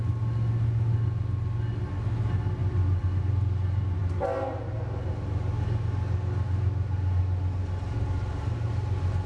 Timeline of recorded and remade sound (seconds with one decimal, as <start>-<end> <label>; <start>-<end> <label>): 0.0-2.6 recorded; 2.6-3.2 remade; 3.2-9.3 recorded